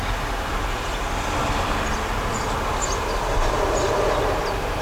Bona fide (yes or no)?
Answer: yes